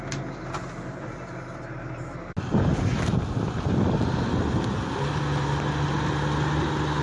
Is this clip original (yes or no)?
yes